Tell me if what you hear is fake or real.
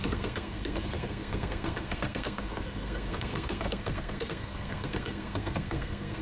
fake